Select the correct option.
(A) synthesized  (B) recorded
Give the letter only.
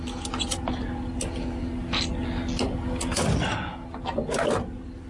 B